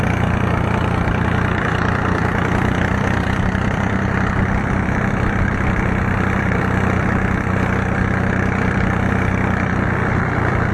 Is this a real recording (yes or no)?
no